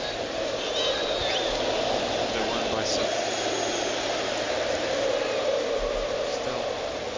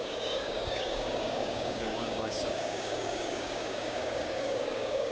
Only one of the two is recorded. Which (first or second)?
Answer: first